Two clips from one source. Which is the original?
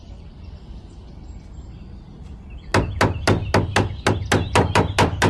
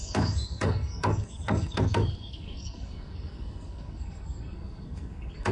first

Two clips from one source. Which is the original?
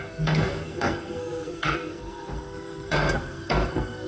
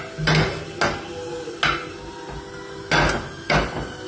second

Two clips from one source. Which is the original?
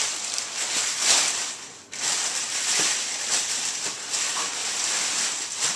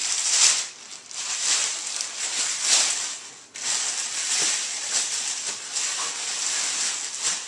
second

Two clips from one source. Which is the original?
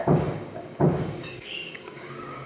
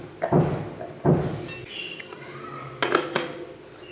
second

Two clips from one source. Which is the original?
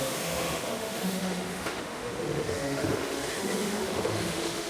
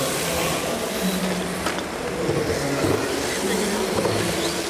second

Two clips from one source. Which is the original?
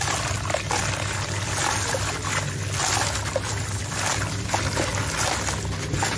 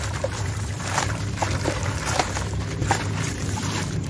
first